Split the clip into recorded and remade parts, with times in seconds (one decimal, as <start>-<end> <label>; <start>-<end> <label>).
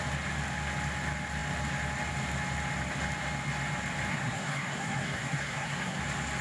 0.0-4.1 recorded; 4.1-6.0 remade; 6.0-6.4 recorded